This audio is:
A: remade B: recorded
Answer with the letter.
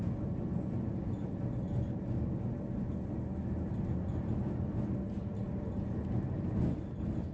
B